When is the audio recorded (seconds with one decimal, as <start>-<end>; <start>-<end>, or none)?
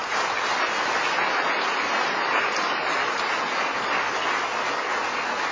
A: 0.0-5.5